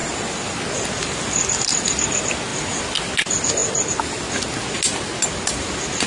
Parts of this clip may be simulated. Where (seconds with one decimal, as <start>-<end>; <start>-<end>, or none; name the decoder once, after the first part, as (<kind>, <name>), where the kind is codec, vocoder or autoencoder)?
0.0-1.6 (vocoder, BigVGAN v2); 3.6-4.3